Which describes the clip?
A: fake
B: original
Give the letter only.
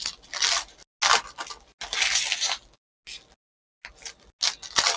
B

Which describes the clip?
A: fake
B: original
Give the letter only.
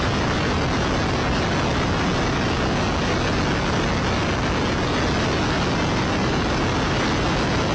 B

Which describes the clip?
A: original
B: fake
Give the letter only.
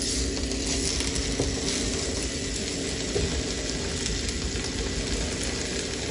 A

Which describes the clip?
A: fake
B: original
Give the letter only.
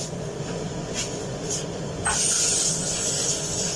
A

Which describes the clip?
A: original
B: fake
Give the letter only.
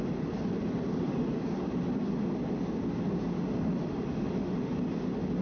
A